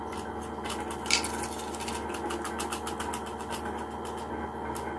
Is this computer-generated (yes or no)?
no